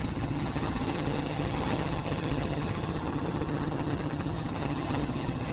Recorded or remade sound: remade